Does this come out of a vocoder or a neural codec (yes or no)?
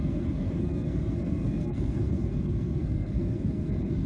yes